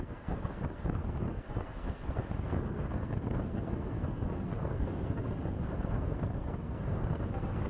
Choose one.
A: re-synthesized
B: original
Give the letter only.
A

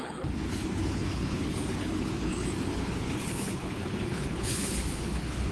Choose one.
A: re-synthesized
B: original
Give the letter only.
A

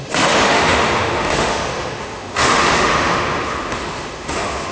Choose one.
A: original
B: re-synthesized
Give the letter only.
B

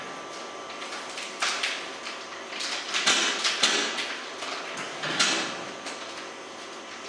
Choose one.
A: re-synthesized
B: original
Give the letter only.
B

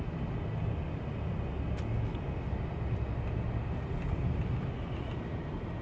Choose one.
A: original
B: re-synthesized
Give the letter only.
A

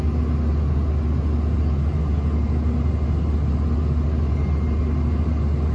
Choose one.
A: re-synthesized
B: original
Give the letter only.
B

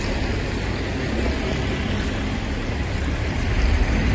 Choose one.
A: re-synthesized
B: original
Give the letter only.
B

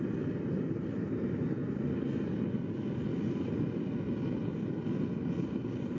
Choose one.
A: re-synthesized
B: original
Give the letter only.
B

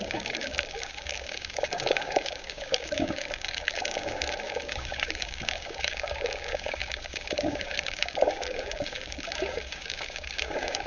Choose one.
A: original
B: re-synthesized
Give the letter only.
B